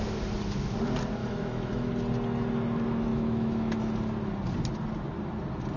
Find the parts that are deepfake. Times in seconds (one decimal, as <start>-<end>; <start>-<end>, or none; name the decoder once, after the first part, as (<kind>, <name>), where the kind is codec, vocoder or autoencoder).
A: 1.2-1.9 (autoencoder, DAC-VAE); 3.1-3.8